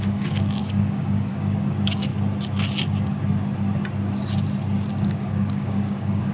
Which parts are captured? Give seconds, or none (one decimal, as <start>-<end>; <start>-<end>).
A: 2.1-4.9